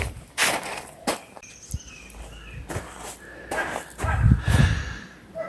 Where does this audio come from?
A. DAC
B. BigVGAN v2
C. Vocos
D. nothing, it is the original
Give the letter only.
B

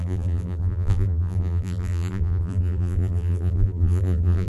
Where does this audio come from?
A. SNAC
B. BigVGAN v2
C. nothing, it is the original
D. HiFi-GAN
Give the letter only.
B